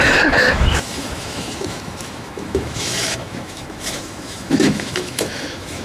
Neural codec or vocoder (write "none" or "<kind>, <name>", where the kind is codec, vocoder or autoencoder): autoencoder, DAC-VAE